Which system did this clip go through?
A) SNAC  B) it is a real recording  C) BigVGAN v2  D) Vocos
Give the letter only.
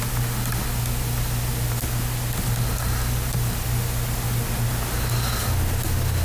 B